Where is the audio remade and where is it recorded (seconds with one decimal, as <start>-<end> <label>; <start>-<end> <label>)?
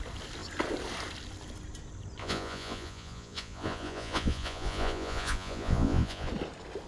0.0-2.2 recorded; 2.2-6.3 remade; 6.3-6.9 recorded